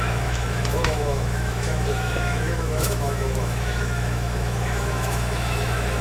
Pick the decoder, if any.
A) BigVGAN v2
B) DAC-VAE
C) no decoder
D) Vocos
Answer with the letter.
B